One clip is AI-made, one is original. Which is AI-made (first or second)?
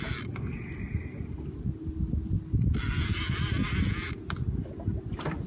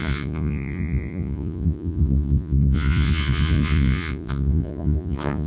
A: second